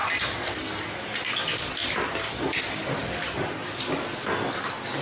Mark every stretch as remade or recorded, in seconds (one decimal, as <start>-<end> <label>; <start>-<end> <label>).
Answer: 0.0-5.0 recorded